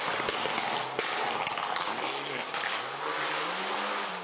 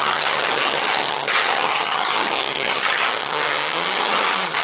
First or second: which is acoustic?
first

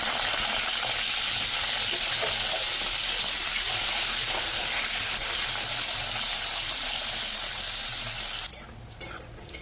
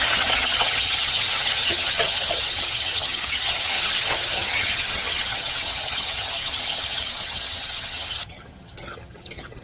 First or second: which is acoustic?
first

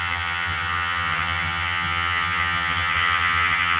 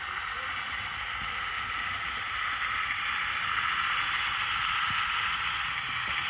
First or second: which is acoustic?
second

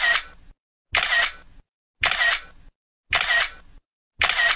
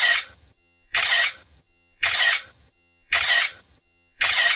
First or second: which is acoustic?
first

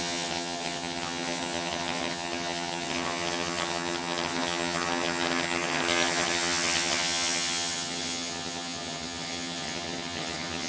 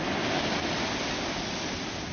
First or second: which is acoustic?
second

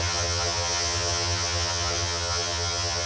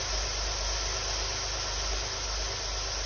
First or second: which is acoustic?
second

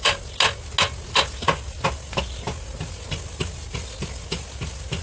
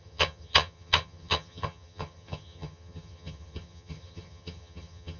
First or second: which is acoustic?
first